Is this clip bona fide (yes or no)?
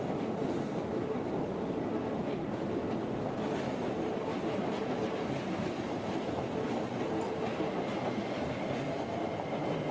yes